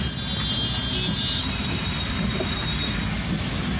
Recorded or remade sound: recorded